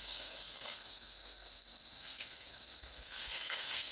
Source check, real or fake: fake